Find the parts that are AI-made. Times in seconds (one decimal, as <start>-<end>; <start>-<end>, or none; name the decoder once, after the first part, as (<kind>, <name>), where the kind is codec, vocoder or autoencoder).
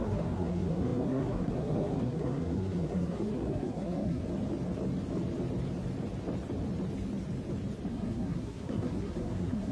0.0-4.2 (codec, SNAC); 7.9-9.7